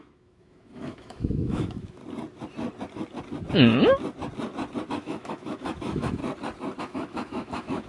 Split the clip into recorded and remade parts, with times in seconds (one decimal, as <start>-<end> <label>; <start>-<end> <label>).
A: 0.0-2.0 remade; 2.0-4.9 recorded; 4.9-6.2 remade; 6.2-6.8 recorded; 6.8-7.9 remade